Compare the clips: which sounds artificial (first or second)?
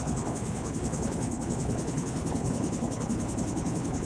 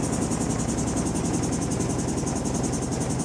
first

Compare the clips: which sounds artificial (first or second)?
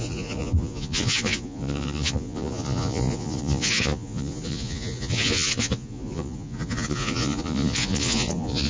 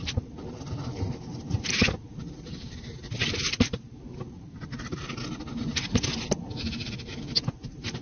first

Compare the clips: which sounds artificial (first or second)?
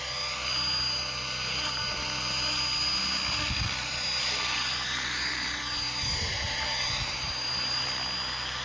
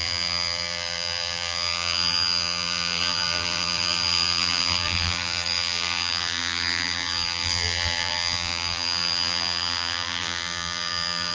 second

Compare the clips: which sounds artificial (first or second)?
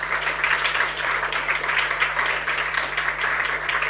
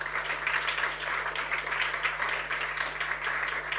first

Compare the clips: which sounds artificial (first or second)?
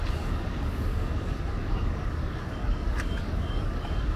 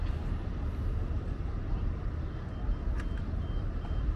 first